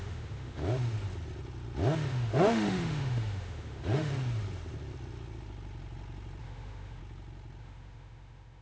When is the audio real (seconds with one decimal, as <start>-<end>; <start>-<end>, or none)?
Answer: 0.6-2.1; 4.1-6.4; 7.0-7.6